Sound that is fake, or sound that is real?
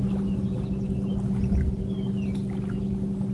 real